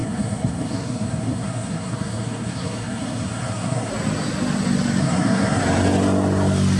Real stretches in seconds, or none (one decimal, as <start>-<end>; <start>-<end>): 3.9-5.0; 5.6-6.8